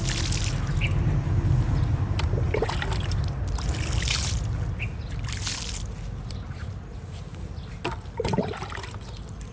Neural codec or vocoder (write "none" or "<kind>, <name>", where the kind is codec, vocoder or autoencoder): none